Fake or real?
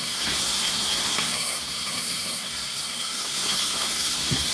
fake